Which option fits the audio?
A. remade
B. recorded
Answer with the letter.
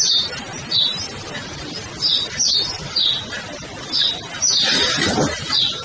B